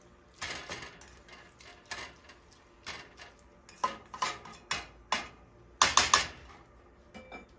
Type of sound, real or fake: real